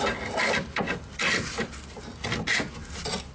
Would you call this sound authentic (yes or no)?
yes